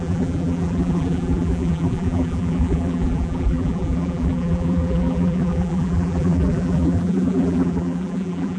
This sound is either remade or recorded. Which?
remade